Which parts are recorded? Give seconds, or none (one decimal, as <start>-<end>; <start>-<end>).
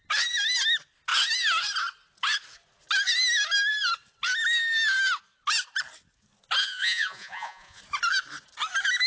0.0-6.6; 7.8-9.1